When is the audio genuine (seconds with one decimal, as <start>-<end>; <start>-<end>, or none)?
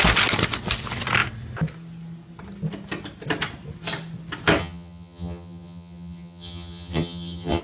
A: 0.0-4.6